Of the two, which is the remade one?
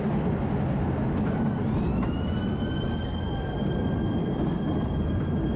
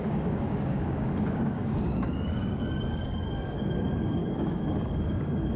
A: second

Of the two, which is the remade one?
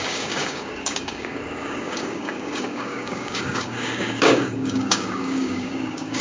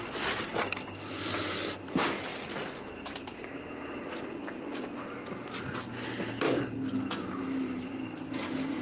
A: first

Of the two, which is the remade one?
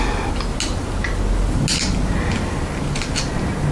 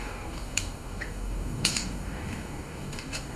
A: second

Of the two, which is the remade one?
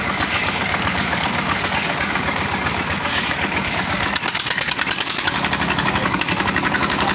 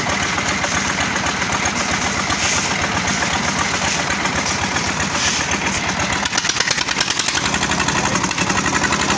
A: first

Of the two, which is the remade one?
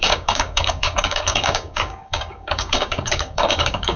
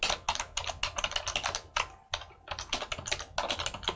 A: first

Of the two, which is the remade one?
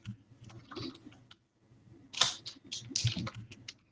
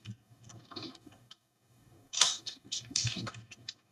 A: second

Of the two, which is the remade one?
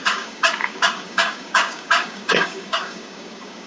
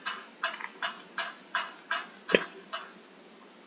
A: first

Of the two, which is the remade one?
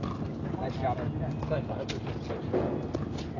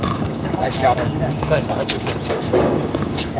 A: second